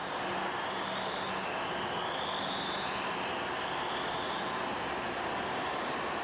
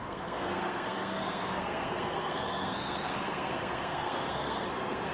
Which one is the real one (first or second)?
first